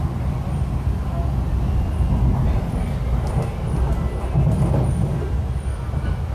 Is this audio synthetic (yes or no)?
no